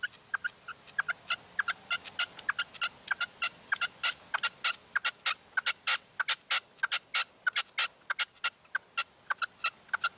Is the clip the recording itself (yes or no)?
yes